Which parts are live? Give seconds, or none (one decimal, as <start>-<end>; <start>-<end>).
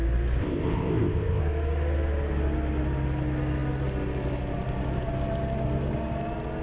0.0-0.4; 1.4-6.6